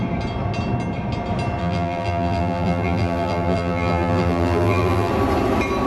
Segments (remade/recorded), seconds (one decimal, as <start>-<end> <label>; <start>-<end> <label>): 0.0-1.6 recorded; 1.6-5.1 remade; 5.1-5.9 recorded